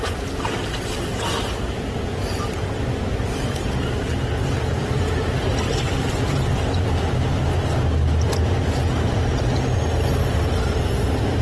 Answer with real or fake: real